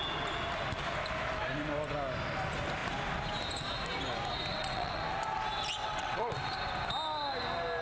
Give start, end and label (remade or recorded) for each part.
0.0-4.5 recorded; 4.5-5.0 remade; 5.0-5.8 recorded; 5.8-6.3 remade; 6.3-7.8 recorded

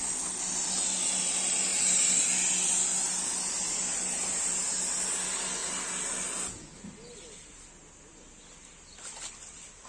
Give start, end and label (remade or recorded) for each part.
0.0-9.9 recorded

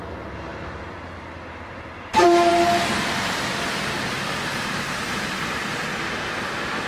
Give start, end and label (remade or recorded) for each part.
0.0-0.5 recorded; 0.5-2.5 remade; 2.5-4.5 recorded; 4.5-5.8 remade; 5.8-6.9 recorded